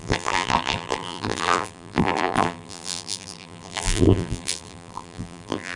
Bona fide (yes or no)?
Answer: no